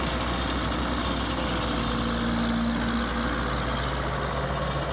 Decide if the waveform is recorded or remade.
recorded